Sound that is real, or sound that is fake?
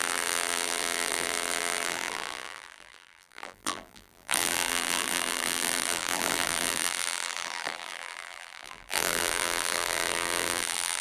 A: fake